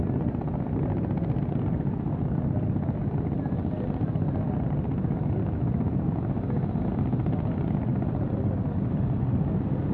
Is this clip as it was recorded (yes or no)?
no